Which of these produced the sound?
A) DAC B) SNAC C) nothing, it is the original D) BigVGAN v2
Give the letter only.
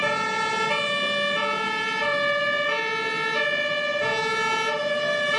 C